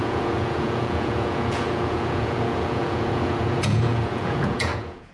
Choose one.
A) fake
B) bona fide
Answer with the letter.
A